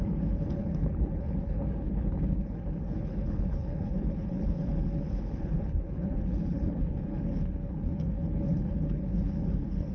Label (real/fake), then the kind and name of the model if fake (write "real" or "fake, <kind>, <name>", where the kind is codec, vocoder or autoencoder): fake, codec, HILCodec